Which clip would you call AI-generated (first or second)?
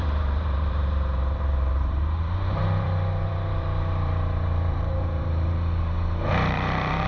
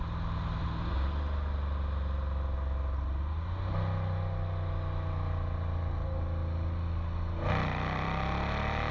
first